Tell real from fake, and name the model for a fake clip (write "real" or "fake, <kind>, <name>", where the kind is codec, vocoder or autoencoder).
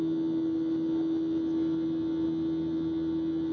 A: real